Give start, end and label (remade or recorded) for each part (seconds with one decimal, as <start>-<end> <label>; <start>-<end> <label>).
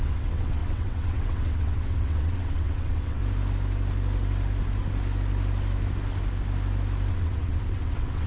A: 0.0-3.2 remade; 3.2-7.1 recorded; 7.1-8.3 remade